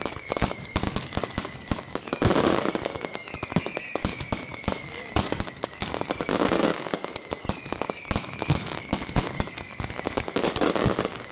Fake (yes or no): yes